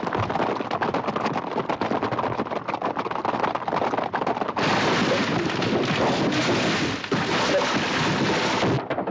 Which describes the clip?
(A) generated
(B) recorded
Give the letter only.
B